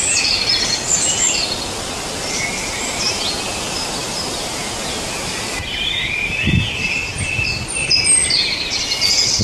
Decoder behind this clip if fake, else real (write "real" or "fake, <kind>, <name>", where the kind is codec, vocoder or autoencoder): real